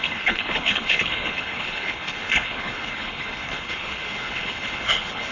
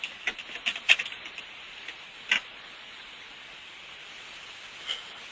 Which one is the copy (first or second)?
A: first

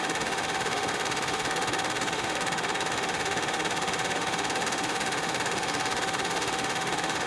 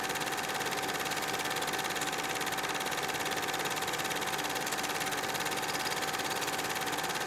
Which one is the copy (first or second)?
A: first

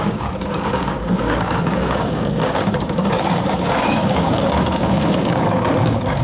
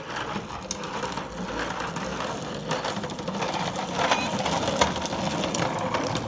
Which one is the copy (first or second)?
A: first